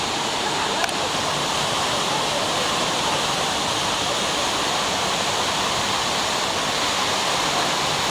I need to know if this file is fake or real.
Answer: fake